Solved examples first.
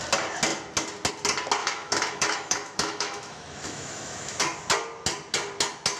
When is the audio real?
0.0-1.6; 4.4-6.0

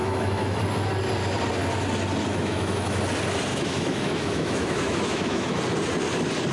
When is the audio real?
0.6-2.3; 3.0-3.5; 5.6-6.5

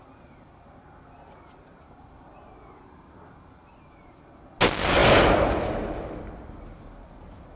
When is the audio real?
0.0-7.6

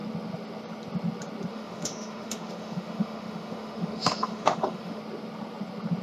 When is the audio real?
0.0-1.5; 5.0-6.0

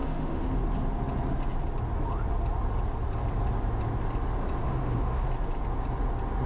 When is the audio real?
0.6-4.6; 5.3-6.5

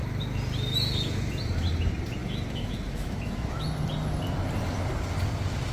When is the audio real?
0.0-2.2; 3.6-5.7

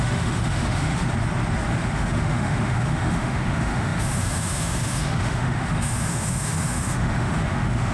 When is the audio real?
1.0-1.7

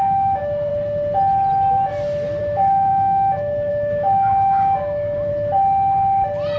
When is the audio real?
0.7-2.4; 5.3-6.6